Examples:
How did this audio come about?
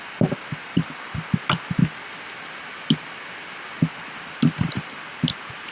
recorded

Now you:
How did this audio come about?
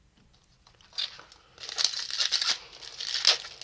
recorded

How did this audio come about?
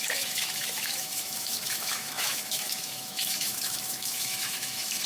remade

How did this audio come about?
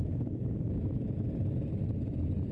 recorded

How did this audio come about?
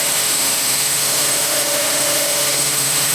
remade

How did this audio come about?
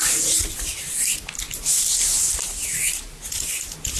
recorded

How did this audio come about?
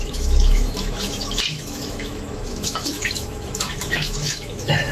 remade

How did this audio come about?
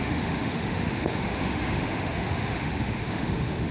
remade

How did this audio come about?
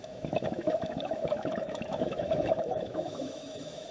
remade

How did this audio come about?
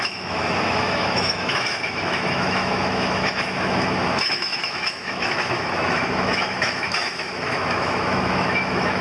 remade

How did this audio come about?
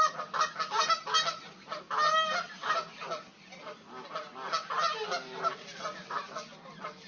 recorded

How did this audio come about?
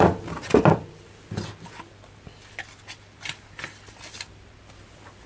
recorded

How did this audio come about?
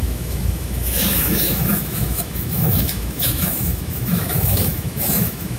remade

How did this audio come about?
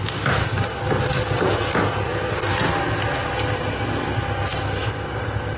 recorded